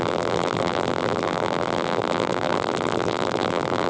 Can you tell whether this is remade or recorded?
remade